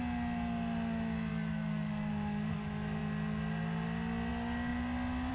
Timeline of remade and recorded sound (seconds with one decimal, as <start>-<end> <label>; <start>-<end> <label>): 0.0-1.3 recorded; 1.3-2.1 remade; 2.1-5.3 recorded